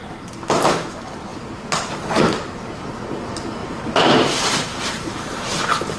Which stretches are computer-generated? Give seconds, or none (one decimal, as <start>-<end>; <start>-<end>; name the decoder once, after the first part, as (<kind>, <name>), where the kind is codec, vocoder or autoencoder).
3.6-5.1 (vocoder, BigVGAN v2)